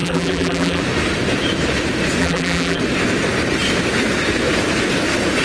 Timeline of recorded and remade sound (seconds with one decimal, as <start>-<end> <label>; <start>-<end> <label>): 0.0-0.8 remade; 0.8-2.2 recorded; 2.2-2.8 remade; 2.8-5.4 recorded